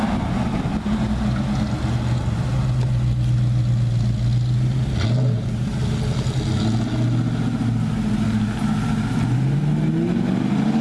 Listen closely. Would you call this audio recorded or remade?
recorded